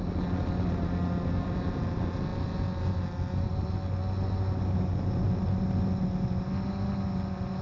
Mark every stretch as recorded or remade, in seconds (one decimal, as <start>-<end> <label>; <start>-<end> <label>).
0.0-7.6 recorded